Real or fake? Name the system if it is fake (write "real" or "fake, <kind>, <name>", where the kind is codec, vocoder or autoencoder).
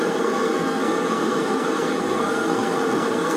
fake, codec, SNAC